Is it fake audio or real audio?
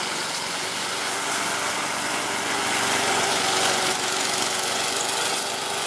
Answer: fake